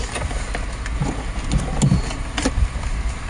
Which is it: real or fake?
real